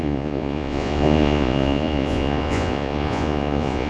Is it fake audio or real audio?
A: fake